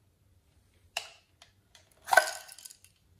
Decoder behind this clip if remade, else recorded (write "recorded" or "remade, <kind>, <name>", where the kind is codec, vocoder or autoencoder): recorded